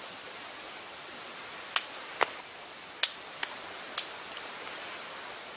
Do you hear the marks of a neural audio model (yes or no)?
no